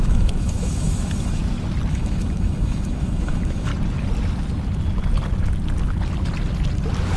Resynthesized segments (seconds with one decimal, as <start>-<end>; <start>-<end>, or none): 0.0-1.4; 1.9-3.7